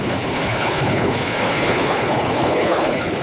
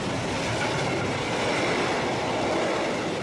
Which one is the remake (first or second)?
first